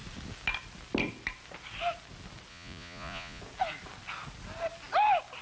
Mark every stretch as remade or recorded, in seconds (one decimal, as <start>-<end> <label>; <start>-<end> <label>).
0.0-2.5 recorded; 2.5-3.4 remade; 3.4-5.4 recorded